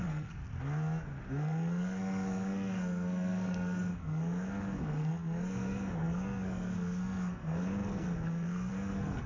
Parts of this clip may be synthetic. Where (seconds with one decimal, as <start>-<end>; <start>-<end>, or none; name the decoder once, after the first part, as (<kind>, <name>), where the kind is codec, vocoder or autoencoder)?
0.0-0.4 (codec, SNAC); 1.3-9.3